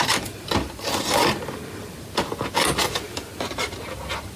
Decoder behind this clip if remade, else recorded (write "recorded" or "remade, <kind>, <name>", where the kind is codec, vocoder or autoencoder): remade, vocoder, BigVGAN v2